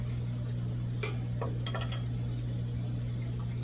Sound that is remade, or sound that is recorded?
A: recorded